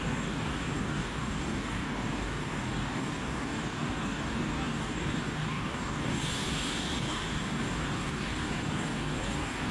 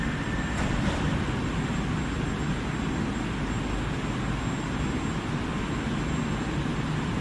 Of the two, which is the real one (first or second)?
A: second